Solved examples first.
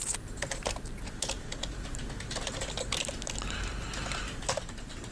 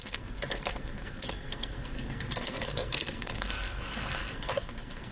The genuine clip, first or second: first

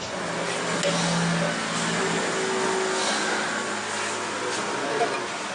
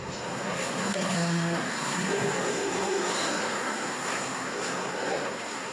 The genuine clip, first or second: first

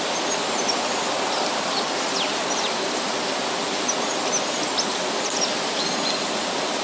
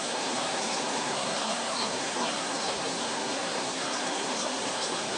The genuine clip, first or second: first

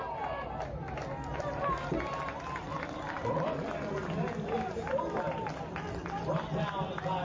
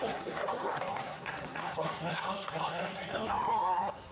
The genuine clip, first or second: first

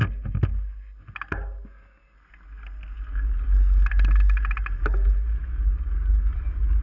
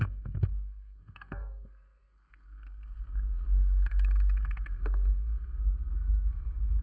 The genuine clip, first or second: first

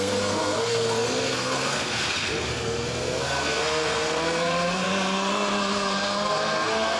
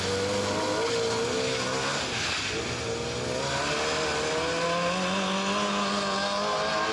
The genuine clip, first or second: second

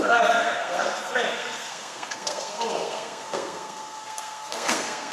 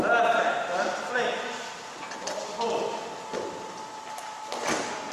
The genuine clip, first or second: second